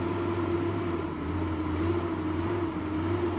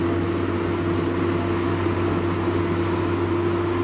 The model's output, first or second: first